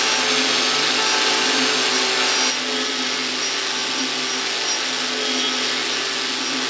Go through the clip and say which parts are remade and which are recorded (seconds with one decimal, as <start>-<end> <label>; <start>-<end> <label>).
0.0-6.7 recorded